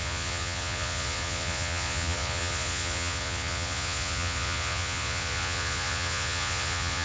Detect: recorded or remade remade